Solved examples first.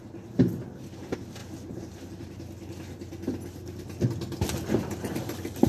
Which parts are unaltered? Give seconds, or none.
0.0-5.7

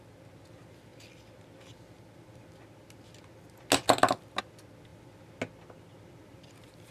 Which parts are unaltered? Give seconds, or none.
0.0-6.9

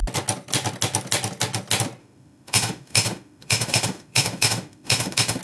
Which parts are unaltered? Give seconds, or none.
0.0-2.0

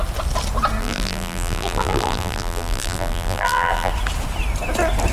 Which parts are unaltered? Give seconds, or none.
0.0-0.8; 3.9-5.1

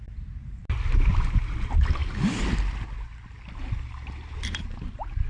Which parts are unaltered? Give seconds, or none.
0.0-5.3

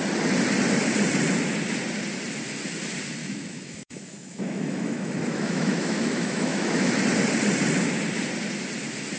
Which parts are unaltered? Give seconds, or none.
0.0-3.2; 6.9-9.2